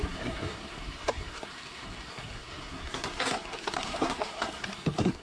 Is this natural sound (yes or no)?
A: no